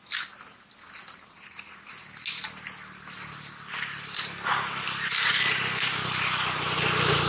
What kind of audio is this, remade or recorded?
recorded